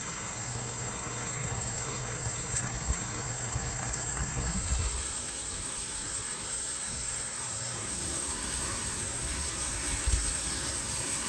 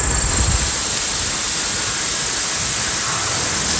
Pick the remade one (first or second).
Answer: first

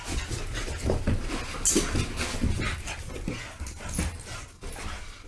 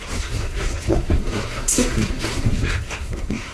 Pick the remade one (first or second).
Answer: second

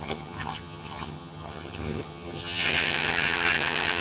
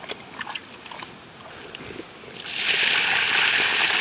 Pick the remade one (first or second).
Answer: first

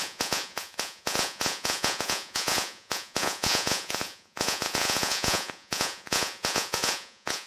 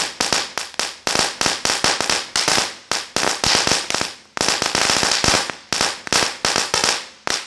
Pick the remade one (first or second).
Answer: first